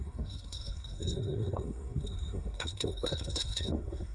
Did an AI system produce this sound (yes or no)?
yes